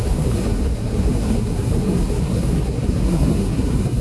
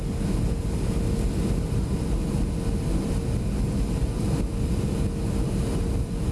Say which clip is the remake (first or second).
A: first